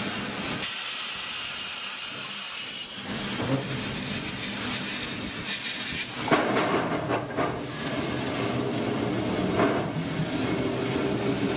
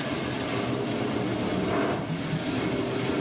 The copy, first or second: second